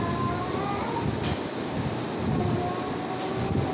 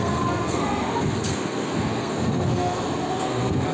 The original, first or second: first